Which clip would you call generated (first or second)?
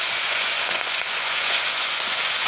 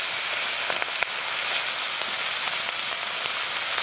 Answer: first